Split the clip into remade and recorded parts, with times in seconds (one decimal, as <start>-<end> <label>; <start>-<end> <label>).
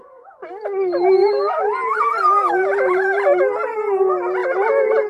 0.0-5.1 recorded